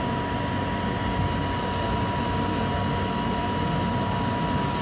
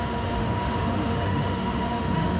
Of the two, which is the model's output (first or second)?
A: second